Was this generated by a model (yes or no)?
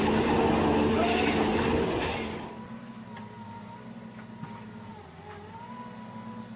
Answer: no